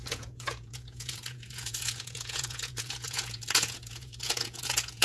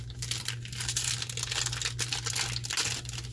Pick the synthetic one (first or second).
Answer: first